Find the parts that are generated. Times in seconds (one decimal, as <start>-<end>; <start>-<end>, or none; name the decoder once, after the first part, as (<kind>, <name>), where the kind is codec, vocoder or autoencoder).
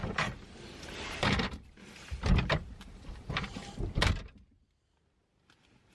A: 0.0-3.6 (vocoder, BigVGAN v2)